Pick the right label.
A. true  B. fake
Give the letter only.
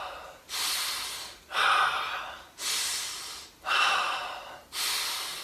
A